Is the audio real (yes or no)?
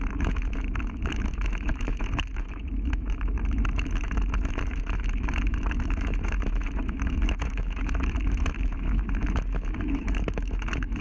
no